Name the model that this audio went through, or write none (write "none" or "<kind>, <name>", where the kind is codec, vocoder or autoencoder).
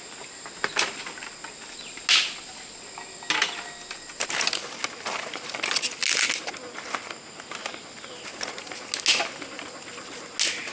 none